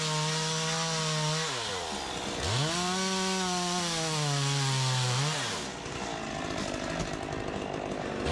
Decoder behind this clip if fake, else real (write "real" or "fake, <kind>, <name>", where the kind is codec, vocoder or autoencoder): real